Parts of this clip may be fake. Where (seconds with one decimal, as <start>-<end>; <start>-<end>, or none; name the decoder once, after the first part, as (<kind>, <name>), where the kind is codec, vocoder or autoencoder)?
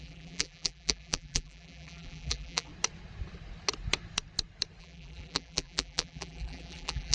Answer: 0.0-2.7 (vocoder, BigVGAN v2); 4.8-7.1